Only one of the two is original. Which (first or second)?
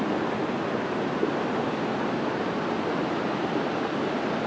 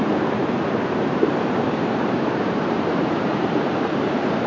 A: first